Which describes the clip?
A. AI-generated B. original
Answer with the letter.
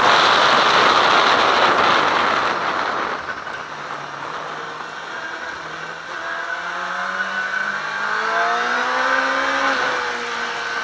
B